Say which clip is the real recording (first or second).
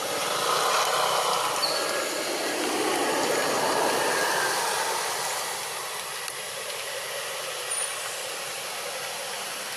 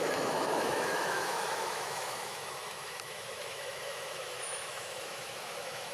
first